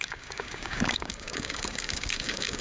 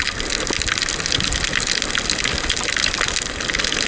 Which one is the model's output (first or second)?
first